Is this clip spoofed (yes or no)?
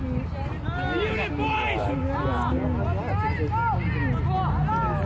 no